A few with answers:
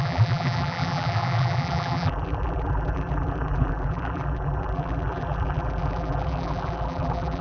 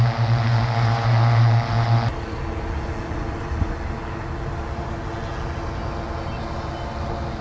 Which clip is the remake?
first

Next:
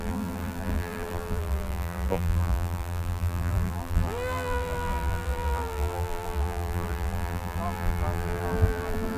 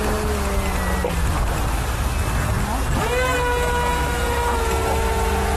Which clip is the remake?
first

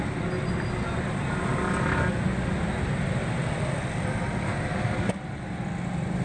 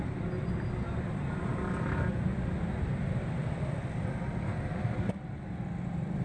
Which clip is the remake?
second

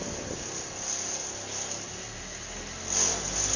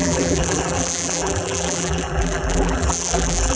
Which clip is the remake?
second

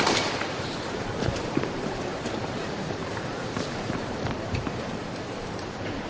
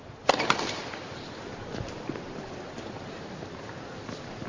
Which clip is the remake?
first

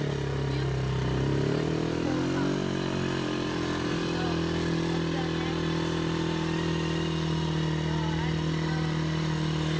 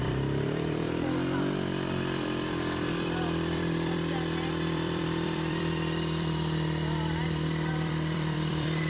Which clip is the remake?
second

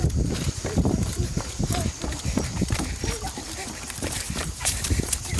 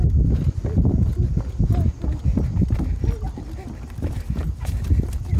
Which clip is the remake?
first